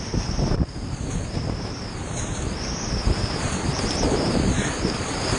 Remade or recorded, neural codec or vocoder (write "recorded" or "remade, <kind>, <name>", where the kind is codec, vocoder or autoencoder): remade, vocoder, BigVGAN v2